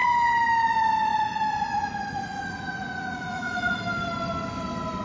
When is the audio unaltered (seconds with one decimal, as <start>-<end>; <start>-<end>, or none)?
0.0-1.1; 3.8-5.0